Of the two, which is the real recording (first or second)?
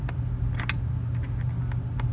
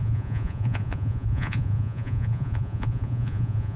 first